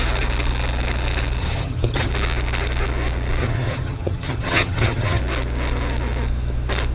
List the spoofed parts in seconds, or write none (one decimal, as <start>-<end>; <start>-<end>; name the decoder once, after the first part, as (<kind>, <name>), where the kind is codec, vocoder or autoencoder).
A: 1.4-2.1 (vocoder, HiFi-GAN); 3.4-5.2